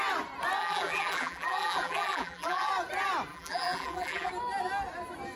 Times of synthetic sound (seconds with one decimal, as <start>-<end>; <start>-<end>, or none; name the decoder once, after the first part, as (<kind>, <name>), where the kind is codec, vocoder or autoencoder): 0.6-2.7 (vocoder, BigVGAN v2); 3.3-4.3